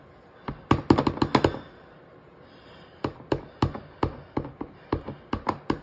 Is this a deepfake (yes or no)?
no